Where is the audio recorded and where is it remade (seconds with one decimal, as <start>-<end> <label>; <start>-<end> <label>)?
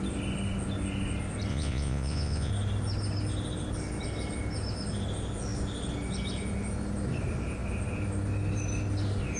0.0-1.5 recorded; 1.5-2.5 remade; 2.5-9.4 recorded